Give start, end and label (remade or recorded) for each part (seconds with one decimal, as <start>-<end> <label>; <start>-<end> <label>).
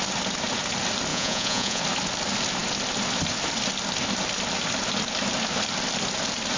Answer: 0.0-1.1 recorded; 1.1-1.8 remade; 1.8-6.6 recorded